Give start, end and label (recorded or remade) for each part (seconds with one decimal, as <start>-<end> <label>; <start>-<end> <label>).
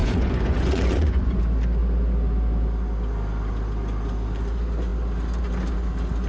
0.0-1.4 remade; 1.4-6.3 recorded